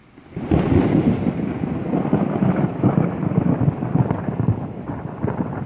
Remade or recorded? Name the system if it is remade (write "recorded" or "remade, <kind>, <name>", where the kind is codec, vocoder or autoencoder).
recorded